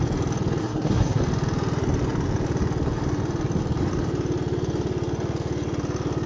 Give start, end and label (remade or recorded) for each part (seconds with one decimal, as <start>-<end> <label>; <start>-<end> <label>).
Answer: 0.0-0.6 recorded; 0.6-1.2 remade; 1.2-6.3 recorded